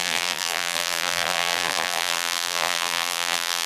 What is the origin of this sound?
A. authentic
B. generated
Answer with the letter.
B